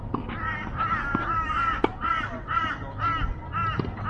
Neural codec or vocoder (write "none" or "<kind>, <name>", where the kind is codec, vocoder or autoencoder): none